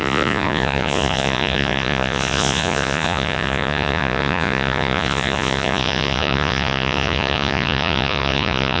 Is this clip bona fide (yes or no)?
no